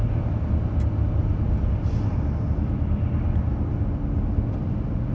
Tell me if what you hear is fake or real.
real